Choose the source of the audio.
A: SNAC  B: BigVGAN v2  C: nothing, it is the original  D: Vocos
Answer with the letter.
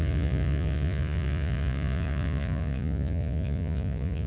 D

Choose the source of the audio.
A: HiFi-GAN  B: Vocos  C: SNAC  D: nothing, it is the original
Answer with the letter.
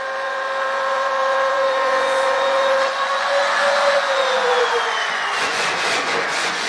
B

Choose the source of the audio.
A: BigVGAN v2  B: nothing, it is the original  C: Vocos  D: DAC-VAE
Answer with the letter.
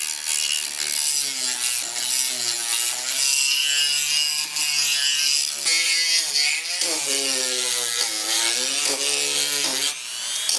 B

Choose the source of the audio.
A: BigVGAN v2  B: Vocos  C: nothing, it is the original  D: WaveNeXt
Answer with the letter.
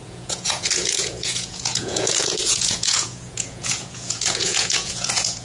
B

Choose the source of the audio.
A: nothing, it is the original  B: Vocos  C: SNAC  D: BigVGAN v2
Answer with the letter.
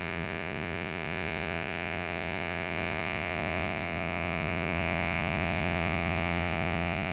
B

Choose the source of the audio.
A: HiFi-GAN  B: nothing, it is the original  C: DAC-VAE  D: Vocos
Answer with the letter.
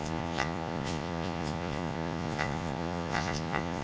D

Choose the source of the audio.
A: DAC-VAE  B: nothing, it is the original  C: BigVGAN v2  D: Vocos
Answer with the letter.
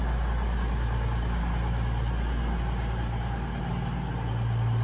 B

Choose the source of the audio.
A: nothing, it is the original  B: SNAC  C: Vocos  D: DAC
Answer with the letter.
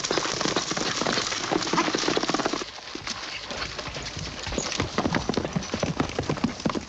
A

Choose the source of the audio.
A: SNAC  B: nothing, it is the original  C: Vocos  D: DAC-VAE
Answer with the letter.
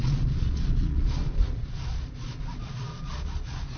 C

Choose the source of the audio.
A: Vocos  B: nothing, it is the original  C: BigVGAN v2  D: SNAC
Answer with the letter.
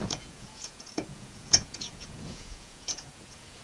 A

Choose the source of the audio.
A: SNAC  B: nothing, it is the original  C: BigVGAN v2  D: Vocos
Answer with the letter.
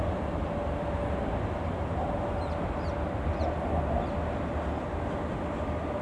B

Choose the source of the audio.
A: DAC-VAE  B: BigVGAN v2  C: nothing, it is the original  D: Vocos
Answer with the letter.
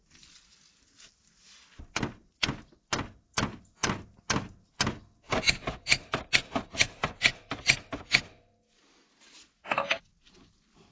C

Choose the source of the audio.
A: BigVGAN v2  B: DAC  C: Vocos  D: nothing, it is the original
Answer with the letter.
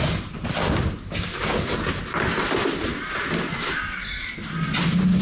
D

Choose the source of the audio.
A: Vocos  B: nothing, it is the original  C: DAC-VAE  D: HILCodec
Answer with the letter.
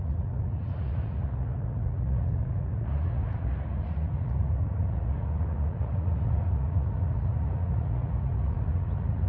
A